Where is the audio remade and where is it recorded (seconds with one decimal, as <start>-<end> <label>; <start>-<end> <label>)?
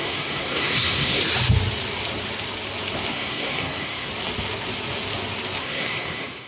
0.0-1.2 remade; 1.2-3.1 recorded; 3.1-4.1 remade; 4.1-5.6 recorded; 5.6-6.5 remade